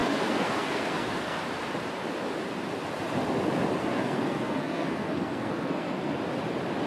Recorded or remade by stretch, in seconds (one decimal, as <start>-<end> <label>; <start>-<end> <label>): 0.0-1.4 remade; 1.4-3.8 recorded; 3.8-6.2 remade; 6.2-6.9 recorded